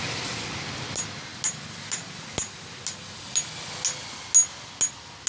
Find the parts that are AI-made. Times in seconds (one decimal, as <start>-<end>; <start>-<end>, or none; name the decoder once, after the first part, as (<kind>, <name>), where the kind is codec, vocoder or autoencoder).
none